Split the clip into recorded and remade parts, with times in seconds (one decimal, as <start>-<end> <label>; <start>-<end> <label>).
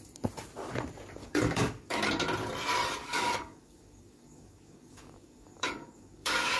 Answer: 0.0-1.2 recorded; 1.2-2.1 remade; 2.1-3.0 recorded; 3.0-6.6 remade